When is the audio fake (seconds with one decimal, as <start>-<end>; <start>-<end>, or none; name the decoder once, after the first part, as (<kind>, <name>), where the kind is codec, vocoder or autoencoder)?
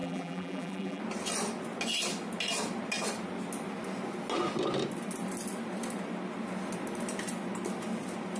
0.0-1.0 (vocoder, BigVGAN v2)